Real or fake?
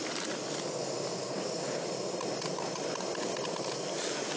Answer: real